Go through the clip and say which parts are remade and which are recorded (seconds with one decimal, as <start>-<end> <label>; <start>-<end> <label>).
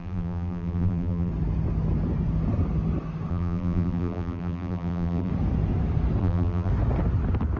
0.0-1.3 remade; 1.3-3.3 recorded; 3.3-5.3 remade; 5.3-6.2 recorded; 6.2-6.7 remade; 6.7-7.6 recorded